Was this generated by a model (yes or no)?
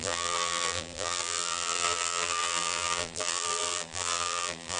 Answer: yes